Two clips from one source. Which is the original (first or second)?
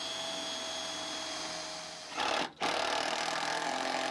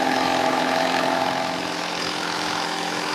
first